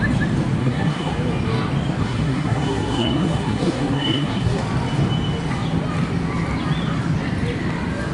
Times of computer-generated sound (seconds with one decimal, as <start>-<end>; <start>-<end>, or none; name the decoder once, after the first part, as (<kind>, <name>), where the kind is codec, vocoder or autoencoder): 0.6-1.1 (codec, SNAC); 2.0-4.6